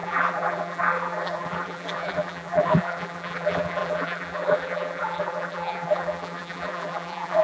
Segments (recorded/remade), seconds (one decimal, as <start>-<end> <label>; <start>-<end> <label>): 0.0-7.4 remade